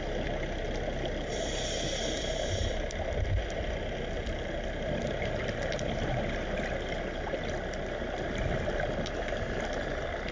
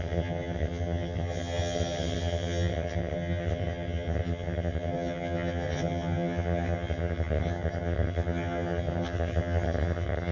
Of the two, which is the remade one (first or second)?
second